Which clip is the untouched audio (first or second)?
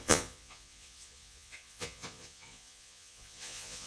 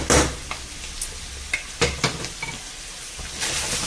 second